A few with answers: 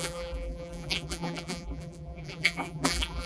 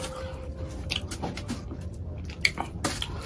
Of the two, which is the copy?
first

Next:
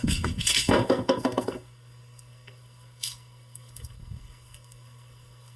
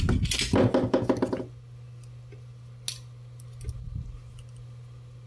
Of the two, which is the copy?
first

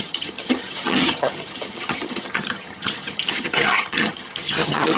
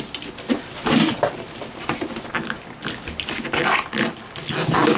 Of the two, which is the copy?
first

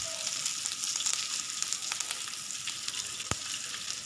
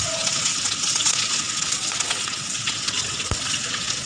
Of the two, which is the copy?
second